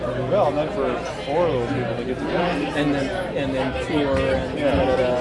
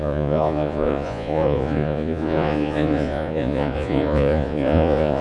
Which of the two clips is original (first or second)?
first